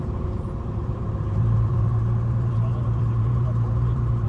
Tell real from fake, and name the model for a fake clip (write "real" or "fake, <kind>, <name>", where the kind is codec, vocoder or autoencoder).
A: fake, vocoder, BigVGAN v2